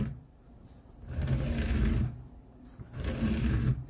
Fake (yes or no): no